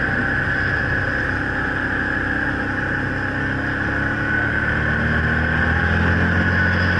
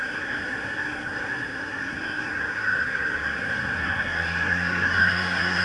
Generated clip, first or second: second